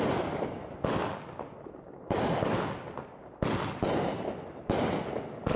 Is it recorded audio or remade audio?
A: recorded